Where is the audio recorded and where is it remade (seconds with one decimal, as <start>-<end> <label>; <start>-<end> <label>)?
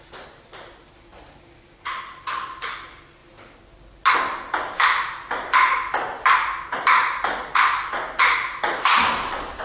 0.0-9.6 recorded